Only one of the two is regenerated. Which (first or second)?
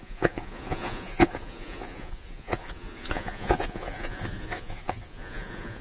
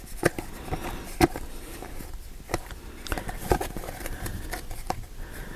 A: first